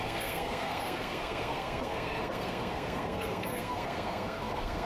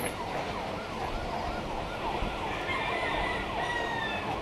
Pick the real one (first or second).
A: second